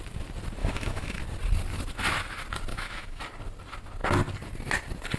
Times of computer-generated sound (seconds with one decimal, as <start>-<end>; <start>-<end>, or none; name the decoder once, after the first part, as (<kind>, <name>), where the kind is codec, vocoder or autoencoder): 0.6-1.2 (autoencoder, DAC-VAE); 2.7-3.2